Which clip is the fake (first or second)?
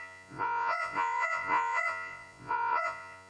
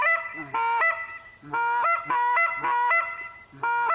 first